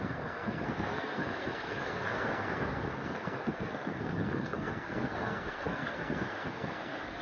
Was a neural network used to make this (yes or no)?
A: yes